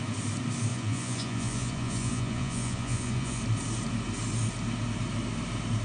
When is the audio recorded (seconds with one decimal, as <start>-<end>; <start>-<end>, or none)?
0.0-0.7; 3.4-5.8